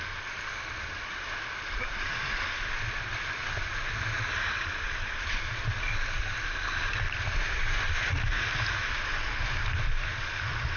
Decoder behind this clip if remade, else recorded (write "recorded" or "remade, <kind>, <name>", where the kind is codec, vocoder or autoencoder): recorded